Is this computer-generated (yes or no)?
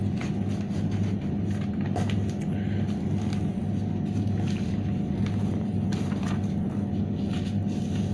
no